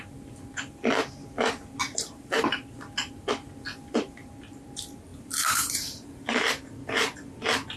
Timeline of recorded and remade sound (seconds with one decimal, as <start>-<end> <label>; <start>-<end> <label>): 0.0-1.9 recorded; 1.9-2.5 remade; 2.5-5.1 recorded; 5.1-6.3 remade; 6.3-7.8 recorded

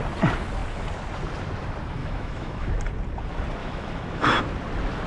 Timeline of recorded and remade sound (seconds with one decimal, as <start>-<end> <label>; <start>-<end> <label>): 0.0-2.0 recorded; 2.0-2.8 remade; 2.8-3.6 recorded; 3.6-4.4 remade; 4.4-5.1 recorded

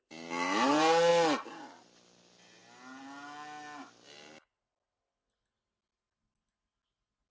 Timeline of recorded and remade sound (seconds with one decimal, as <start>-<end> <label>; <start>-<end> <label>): 0.0-7.3 recorded

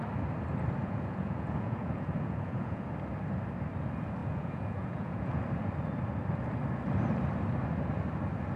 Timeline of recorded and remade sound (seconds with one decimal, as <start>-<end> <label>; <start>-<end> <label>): 0.0-0.8 recorded; 0.8-2.9 remade; 2.9-4.2 recorded; 4.2-5.3 remade; 5.3-8.6 recorded